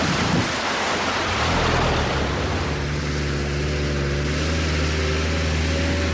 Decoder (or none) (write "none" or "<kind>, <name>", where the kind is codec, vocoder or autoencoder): none